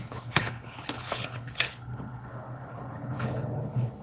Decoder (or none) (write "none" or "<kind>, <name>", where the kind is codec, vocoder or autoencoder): codec, HILCodec